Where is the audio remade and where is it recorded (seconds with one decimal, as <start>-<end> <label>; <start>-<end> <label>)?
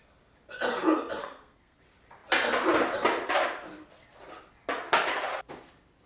0.0-1.2 recorded; 1.2-1.8 remade; 1.8-6.1 recorded